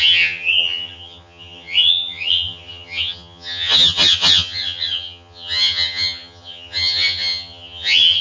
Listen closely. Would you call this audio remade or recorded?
remade